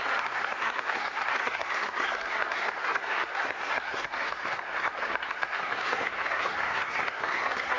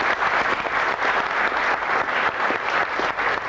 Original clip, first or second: second